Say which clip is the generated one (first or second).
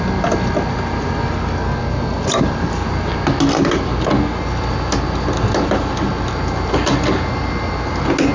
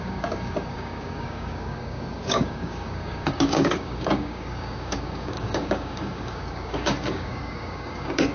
second